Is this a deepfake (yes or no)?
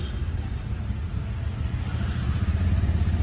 no